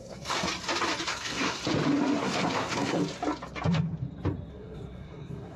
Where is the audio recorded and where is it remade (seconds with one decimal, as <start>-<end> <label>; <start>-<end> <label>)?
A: 0.0-0.4 remade; 0.4-1.1 recorded; 1.1-1.6 remade; 1.6-2.2 recorded; 2.2-3.0 remade; 3.0-4.5 recorded; 4.5-5.6 remade